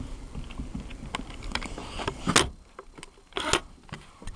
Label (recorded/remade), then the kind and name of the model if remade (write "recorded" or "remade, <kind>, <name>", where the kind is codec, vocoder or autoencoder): recorded